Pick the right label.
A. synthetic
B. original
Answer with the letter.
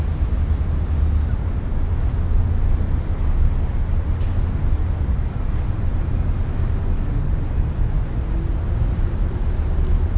B